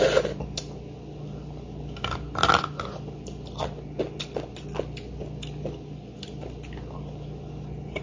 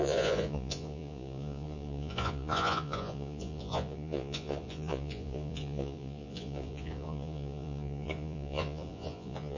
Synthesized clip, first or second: second